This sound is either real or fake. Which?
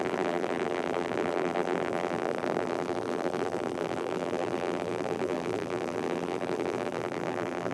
fake